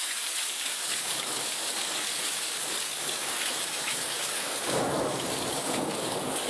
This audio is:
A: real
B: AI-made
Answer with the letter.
B